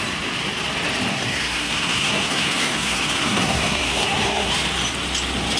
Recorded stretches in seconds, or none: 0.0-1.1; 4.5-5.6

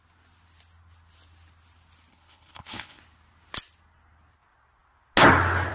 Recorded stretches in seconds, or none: 0.0-2.1; 3.0-5.7

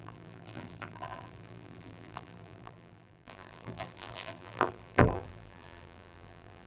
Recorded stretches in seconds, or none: none

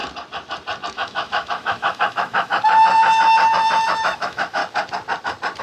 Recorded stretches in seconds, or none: 0.0-0.9; 2.5-3.9; 4.6-5.6

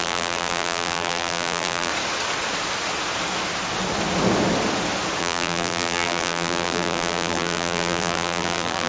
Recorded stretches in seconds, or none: 1.9-5.2

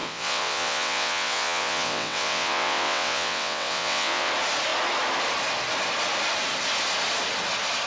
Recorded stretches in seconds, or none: 4.3-7.9

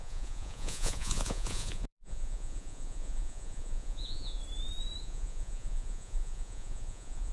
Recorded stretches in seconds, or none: 4.4-5.0